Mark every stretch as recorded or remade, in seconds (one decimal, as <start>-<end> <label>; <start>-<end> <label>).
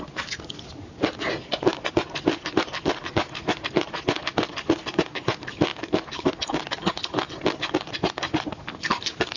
0.0-5.7 recorded; 5.7-6.3 remade; 6.3-9.4 recorded